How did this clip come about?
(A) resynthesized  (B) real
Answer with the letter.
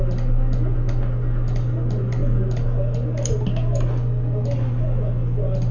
B